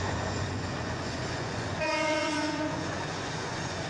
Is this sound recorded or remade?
remade